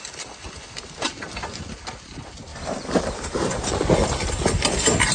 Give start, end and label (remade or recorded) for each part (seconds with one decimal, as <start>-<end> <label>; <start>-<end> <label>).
0.0-2.5 recorded; 2.5-3.7 remade; 3.7-5.1 recorded